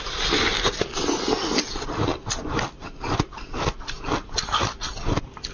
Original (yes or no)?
yes